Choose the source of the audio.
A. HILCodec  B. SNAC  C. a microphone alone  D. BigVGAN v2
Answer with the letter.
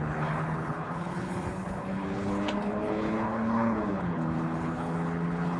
A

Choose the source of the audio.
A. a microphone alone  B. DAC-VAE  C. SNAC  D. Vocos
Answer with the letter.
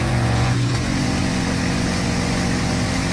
D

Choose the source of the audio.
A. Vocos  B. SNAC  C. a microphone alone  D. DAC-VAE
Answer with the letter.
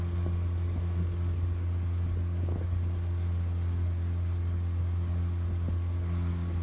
C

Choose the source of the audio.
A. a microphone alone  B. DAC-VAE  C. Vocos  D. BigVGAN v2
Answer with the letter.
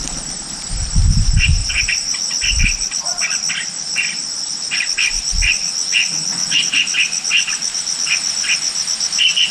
A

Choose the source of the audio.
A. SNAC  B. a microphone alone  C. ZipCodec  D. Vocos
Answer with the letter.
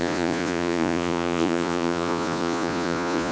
D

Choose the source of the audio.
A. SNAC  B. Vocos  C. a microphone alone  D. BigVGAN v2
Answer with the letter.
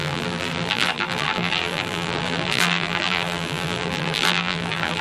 D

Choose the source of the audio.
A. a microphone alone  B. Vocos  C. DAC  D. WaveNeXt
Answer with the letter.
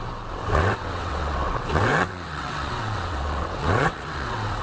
D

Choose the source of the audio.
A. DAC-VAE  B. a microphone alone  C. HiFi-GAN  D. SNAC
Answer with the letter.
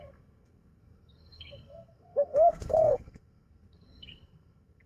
D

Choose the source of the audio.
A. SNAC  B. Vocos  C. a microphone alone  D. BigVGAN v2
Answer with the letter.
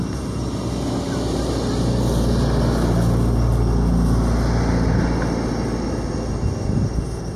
C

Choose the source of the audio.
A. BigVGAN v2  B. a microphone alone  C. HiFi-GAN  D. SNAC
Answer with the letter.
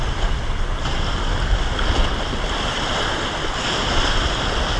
B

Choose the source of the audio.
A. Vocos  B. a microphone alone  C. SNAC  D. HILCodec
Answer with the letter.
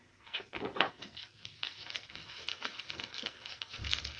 C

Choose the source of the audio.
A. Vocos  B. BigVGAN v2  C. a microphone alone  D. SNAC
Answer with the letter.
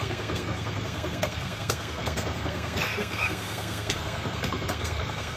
D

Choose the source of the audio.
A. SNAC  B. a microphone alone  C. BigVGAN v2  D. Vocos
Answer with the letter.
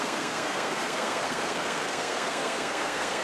A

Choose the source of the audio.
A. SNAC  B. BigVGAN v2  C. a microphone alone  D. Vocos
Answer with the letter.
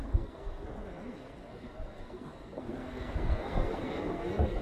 A